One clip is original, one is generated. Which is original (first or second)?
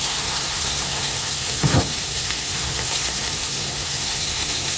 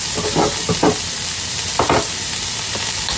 second